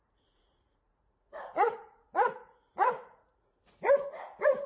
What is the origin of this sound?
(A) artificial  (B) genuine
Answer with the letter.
A